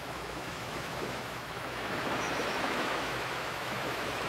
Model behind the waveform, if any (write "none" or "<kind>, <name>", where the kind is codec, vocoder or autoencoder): autoencoder, DAC-VAE